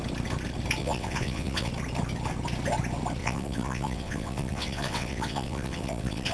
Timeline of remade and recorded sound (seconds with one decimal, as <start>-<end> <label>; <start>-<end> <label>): 0.0-0.8 recorded; 0.8-1.7 remade; 1.7-3.2 recorded; 3.2-6.3 remade